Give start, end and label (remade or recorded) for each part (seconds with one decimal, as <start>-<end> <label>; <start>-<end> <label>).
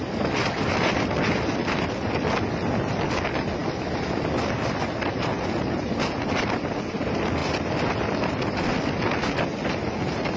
0.0-10.4 recorded